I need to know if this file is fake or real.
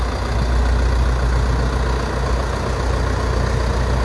real